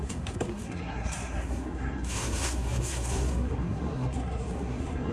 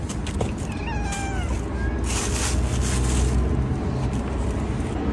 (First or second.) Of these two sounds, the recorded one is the second